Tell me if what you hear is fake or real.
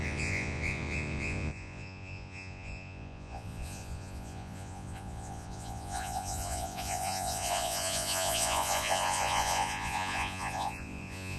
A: fake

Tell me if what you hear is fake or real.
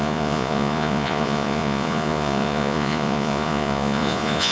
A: fake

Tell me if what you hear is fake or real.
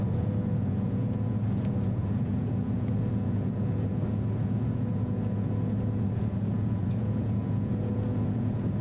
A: fake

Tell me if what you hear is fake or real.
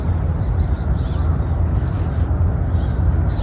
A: real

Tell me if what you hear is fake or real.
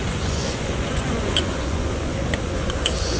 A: fake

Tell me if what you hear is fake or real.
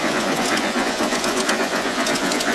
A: fake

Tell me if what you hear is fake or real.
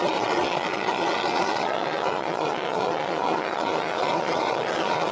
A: fake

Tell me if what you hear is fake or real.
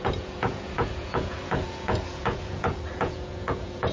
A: fake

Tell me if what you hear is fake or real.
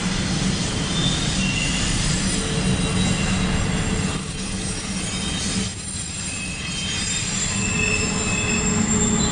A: real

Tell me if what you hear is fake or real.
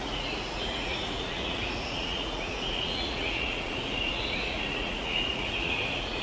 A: fake